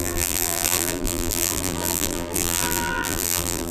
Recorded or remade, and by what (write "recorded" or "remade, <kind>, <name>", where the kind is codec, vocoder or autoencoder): remade, vocoder, BigVGAN v2